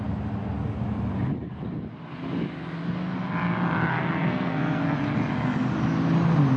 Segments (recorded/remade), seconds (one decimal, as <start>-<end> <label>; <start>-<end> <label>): 0.0-3.9 recorded; 3.9-4.8 remade; 4.8-6.6 recorded